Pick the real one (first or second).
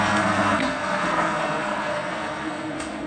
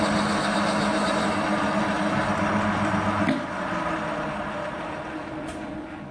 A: second